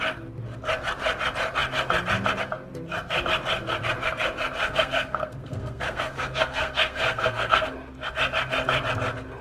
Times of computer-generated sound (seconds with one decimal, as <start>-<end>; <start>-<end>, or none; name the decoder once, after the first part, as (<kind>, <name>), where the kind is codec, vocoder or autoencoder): 4.6-7.7 (codec, SNAC)